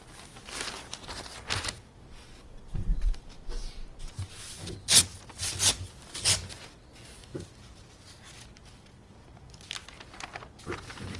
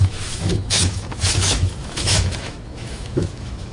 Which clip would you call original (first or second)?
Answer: first